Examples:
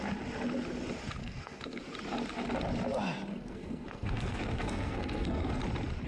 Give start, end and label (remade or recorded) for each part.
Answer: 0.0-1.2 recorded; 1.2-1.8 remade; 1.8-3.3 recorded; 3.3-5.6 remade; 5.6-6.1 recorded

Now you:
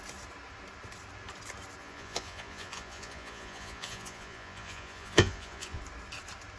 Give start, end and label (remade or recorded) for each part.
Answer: 0.0-1.8 recorded; 1.8-5.8 remade; 5.8-6.6 recorded

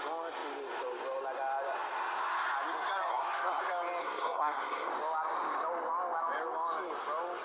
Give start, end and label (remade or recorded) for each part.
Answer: 0.0-3.1 recorded; 3.1-3.6 remade; 3.6-4.0 recorded; 4.0-4.9 remade; 4.9-7.4 recorded